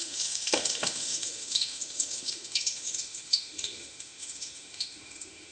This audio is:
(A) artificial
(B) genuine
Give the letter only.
A